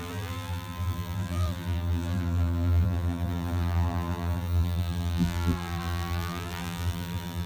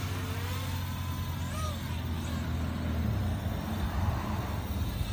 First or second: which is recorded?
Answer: second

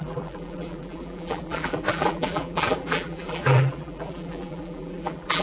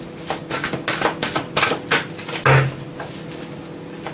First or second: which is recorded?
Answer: second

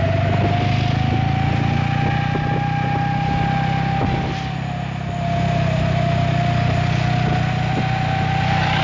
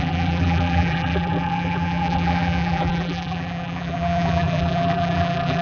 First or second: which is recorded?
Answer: first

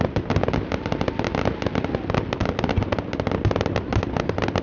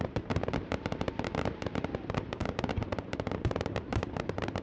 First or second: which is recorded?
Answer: first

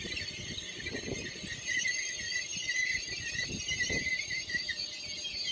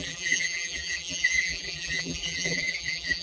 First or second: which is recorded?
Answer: first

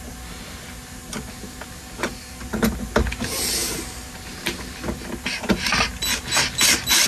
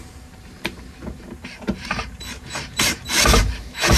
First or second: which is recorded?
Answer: first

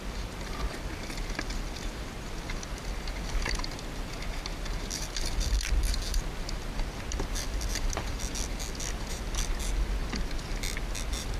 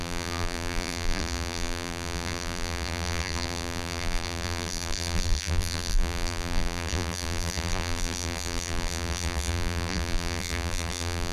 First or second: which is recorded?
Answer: first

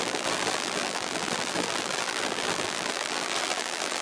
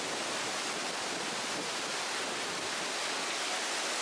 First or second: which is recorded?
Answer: second